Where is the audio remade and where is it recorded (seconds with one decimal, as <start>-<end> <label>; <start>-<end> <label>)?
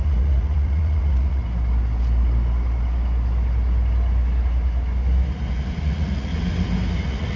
0.0-1.4 remade; 1.4-5.8 recorded; 5.8-6.3 remade; 6.3-7.0 recorded; 7.0-7.4 remade